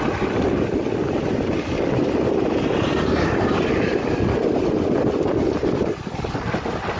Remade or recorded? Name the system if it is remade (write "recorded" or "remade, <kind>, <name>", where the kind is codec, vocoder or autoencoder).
recorded